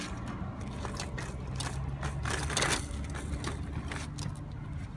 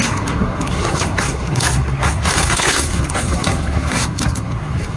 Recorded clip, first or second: first